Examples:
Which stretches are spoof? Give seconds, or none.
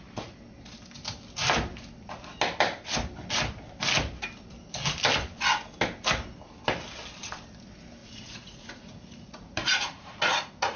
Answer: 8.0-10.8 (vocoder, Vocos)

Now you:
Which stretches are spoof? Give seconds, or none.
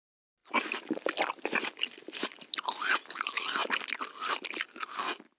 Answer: none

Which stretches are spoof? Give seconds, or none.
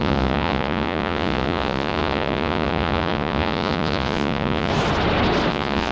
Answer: 0.0-4.7 (vocoder, Vocos); 5.5-5.9